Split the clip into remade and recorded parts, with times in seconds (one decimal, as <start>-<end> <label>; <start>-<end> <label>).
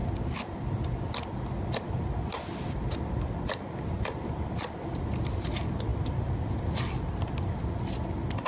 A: 0.0-8.5 recorded